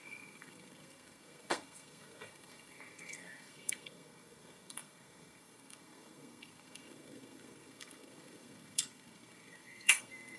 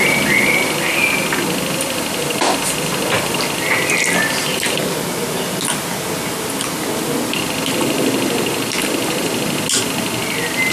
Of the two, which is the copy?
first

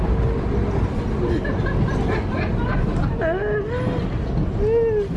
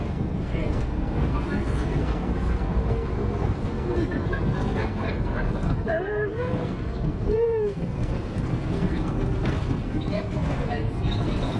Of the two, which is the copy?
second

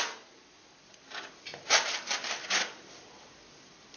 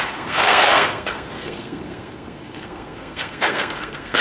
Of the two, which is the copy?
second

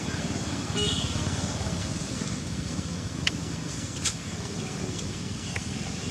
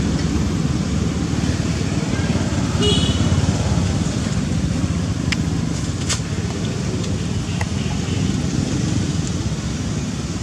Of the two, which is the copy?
first